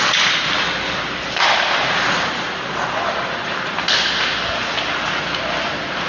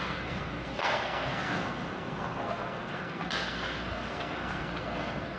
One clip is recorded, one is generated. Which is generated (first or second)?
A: second